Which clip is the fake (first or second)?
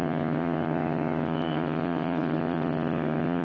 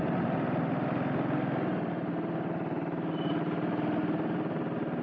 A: first